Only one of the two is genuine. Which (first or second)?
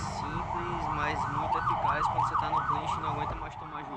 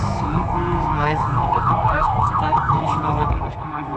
first